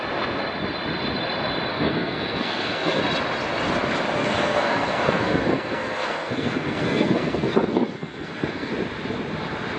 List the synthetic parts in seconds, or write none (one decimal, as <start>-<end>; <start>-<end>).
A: 1.7-3.0; 4.2-8.7